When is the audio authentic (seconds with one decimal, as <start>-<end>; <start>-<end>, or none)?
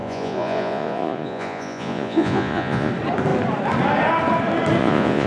2.9-4.8